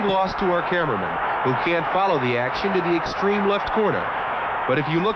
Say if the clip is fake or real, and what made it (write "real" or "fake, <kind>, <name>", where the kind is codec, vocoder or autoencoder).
fake, autoencoder, DAC-VAE